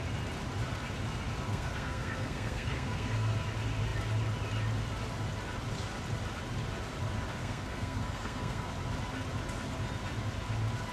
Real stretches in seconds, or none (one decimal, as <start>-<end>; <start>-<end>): 0.0-1.5; 3.3-7.4; 8.7-10.9